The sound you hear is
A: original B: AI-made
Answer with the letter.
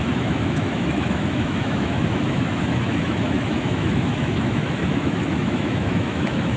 B